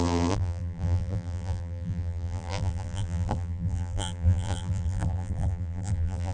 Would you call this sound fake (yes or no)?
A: yes